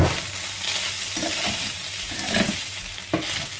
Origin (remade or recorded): recorded